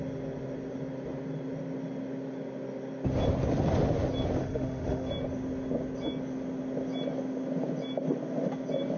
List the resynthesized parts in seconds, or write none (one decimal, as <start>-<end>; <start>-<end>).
4.4-5.1